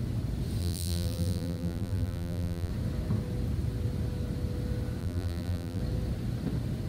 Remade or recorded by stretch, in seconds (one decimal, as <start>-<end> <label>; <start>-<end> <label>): 0.0-0.6 recorded; 0.6-2.7 remade; 2.7-5.0 recorded; 5.0-5.8 remade; 5.8-6.9 recorded